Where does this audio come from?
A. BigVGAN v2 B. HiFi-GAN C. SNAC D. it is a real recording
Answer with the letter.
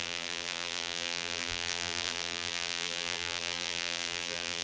A